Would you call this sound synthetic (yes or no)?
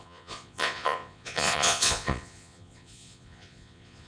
yes